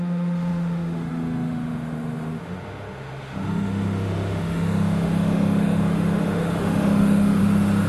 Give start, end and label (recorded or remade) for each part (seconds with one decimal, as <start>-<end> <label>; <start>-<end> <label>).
0.0-7.4 remade; 7.4-7.9 recorded